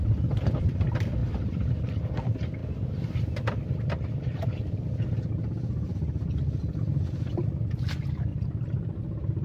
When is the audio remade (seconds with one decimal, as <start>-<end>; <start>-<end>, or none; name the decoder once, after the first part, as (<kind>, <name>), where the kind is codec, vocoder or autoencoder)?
1.2-1.7 (vocoder, BigVGAN v2); 8.3-9.0